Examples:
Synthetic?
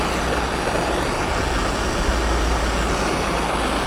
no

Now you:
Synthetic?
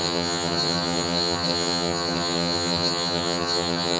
yes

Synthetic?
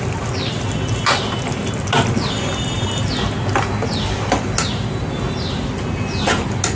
no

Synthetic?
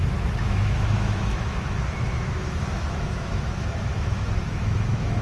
yes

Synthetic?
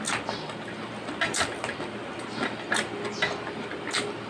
no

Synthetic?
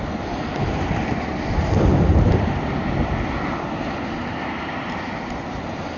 no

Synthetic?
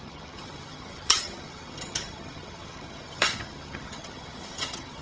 yes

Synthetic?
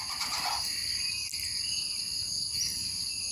no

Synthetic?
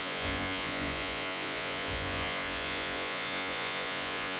yes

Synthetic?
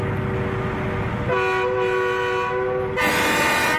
no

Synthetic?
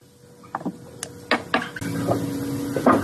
no